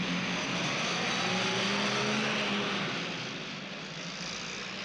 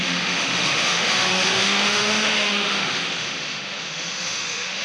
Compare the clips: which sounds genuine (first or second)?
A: first